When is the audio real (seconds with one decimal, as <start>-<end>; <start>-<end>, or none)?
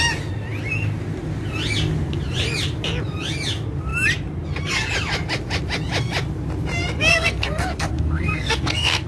0.0-7.1